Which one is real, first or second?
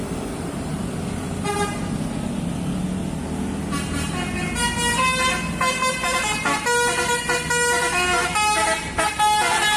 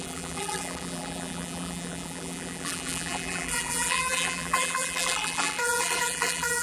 first